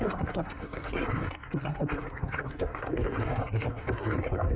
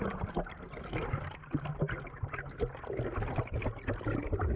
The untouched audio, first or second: second